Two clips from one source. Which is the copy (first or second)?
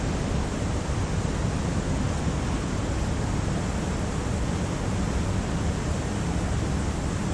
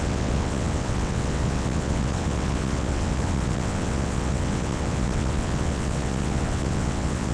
second